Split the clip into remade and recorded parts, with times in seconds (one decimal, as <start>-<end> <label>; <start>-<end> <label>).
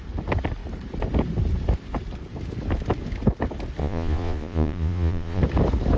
0.0-3.8 recorded; 3.8-5.4 remade; 5.4-6.0 recorded